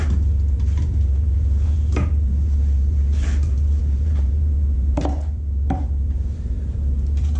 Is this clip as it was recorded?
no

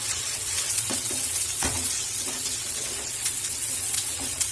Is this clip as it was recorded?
no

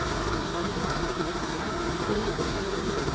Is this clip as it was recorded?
no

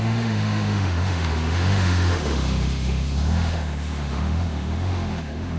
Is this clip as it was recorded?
no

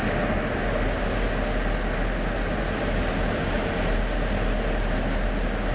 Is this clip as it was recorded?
yes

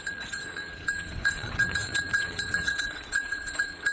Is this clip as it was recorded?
no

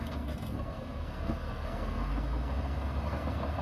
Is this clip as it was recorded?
no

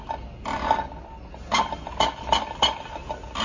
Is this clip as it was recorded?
yes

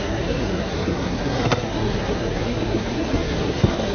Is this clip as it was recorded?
no